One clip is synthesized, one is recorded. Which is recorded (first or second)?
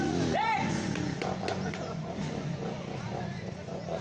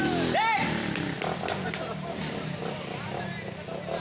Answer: second